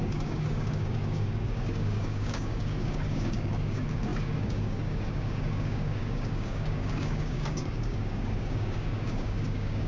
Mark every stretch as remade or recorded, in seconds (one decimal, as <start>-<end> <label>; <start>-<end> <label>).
0.0-9.9 remade